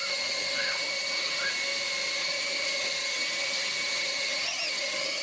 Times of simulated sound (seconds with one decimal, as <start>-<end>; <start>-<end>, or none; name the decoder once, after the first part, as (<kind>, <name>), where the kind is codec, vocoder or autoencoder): 0.0-1.5 (vocoder, HiFi-GAN); 2.2-5.2